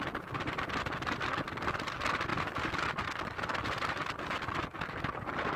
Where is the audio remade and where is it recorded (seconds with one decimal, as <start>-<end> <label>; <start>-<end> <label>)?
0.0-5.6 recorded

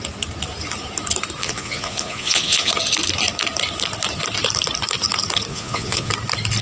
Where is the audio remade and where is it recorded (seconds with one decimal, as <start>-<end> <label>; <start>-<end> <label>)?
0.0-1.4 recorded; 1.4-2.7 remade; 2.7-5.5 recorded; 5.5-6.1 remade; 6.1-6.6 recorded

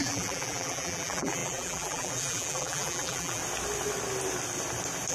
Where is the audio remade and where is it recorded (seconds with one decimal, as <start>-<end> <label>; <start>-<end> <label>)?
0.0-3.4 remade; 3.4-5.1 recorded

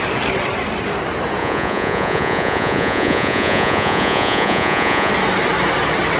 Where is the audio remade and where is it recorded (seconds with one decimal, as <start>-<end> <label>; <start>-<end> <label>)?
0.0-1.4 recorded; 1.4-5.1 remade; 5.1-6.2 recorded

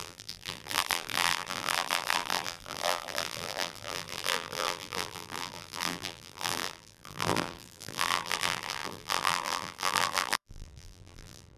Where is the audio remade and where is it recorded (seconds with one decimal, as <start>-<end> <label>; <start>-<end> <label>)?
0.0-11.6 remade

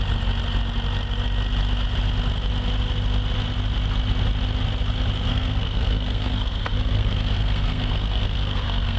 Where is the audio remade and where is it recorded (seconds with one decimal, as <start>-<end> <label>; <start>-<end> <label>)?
0.0-5.3 recorded; 5.3-9.0 remade

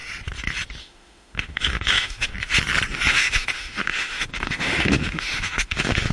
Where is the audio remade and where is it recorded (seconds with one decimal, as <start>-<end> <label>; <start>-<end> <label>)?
0.0-0.8 recorded; 0.8-2.3 remade; 2.3-3.1 recorded; 3.1-6.1 remade

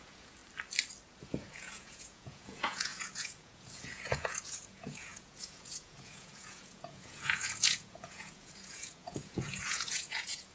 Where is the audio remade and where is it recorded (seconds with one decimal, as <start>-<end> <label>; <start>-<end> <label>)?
0.0-0.4 remade; 0.4-1.2 recorded; 1.2-10.5 remade